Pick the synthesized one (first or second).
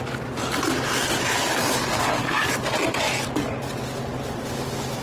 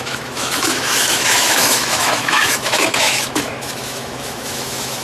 second